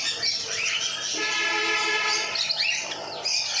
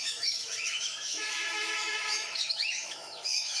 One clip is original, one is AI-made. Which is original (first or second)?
first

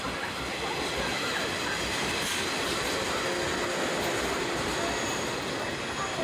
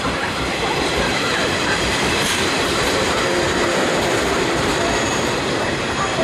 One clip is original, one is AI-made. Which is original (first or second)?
first